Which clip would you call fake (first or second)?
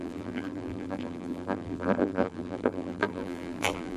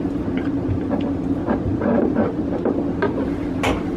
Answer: first